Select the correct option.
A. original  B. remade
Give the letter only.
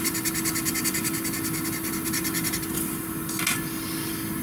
A